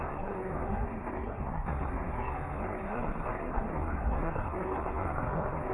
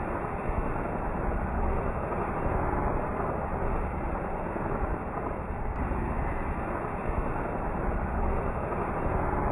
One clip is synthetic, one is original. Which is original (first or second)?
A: second